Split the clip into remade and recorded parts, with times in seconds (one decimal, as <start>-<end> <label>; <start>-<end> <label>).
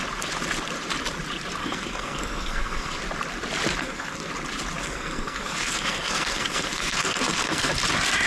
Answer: 0.0-1.6 recorded; 1.6-3.0 remade; 3.0-3.8 recorded; 3.8-4.3 remade; 4.3-4.8 recorded; 4.8-7.7 remade; 7.7-8.3 recorded